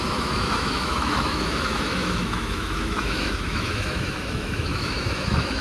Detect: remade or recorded remade